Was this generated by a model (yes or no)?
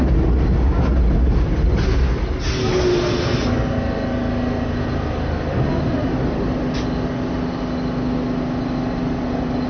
no